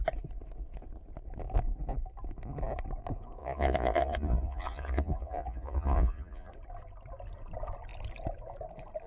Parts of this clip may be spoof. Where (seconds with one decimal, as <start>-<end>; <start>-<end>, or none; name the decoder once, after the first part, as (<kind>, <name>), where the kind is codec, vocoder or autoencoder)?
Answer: 3.4-6.5 (vocoder, Vocos)